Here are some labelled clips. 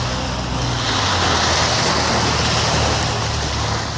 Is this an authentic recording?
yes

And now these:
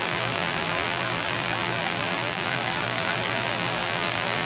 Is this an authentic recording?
no